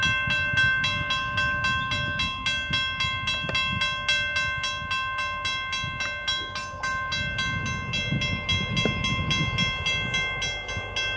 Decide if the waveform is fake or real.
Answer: real